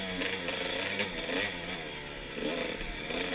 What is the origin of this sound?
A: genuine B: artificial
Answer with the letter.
A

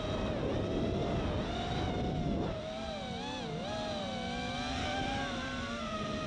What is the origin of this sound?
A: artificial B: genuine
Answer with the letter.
B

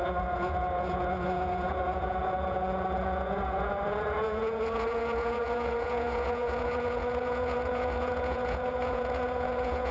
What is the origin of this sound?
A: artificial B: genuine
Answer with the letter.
A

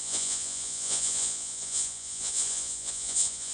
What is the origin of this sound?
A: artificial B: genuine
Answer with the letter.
A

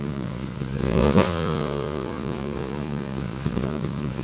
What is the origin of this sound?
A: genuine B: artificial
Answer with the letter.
B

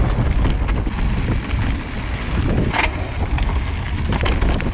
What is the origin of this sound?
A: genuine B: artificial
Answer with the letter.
A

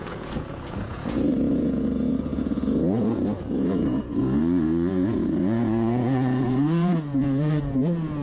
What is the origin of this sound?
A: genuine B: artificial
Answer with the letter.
B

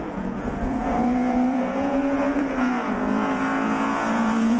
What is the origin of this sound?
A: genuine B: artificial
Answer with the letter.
B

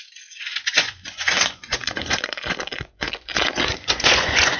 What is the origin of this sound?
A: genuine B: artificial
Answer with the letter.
B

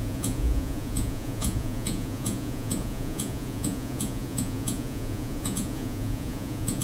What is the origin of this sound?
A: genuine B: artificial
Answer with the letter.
B